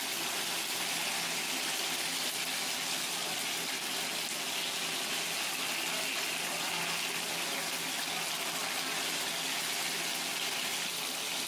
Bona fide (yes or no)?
yes